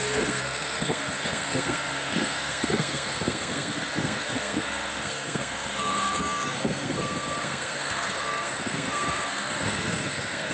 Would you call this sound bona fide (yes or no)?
no